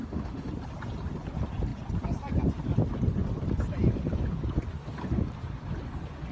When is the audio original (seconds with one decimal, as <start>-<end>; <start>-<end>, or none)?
0.5-6.3